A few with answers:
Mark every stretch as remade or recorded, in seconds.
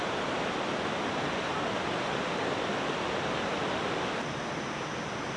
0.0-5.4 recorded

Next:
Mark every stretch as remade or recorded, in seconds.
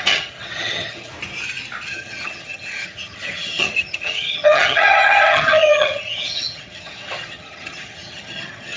0.0-1.1 remade; 1.1-1.9 recorded; 1.9-8.8 remade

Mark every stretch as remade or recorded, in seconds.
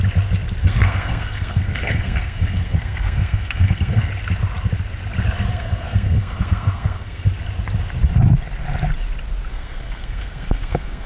0.0-0.6 recorded; 0.6-4.1 remade; 4.1-5.5 recorded; 5.5-7.3 remade; 7.3-9.5 recorded; 9.5-11.1 remade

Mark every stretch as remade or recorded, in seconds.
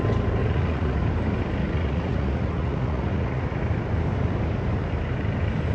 0.0-0.4 recorded; 0.4-1.0 remade; 1.0-1.6 recorded; 1.6-3.4 remade; 3.4-5.7 recorded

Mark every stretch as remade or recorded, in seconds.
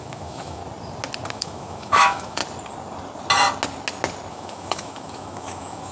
0.0-0.6 remade; 0.6-1.3 recorded; 1.3-2.4 remade; 2.4-4.3 recorded; 4.3-5.9 remade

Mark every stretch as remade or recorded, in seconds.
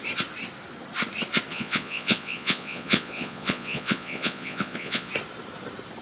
0.0-1.5 recorded; 1.5-5.1 remade; 5.1-6.0 recorded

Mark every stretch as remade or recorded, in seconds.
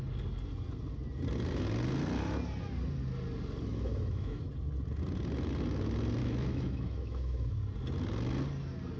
0.0-3.7 recorded; 3.7-4.4 remade; 4.4-6.2 recorded; 6.2-7.5 remade; 7.5-9.0 recorded